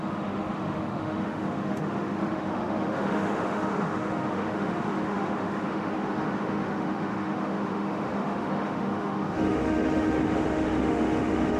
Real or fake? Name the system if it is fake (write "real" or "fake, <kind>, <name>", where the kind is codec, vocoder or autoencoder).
fake, autoencoder, DAC-VAE